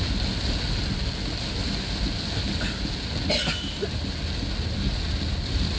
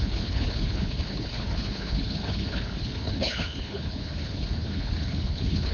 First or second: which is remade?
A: second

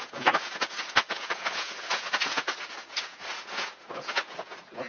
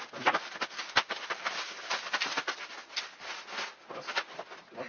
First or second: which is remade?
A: first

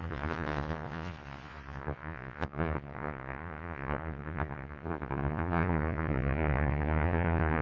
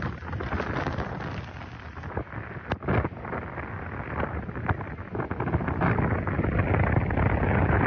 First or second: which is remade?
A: first